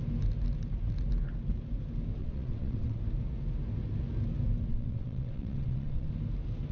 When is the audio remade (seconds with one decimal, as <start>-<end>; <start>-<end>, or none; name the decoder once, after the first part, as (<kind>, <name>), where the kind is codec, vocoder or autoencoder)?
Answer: 2.2-3.0 (vocoder, WaveNeXt); 4.7-6.1